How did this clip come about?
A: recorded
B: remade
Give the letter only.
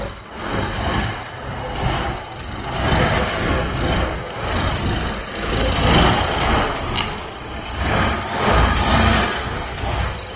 A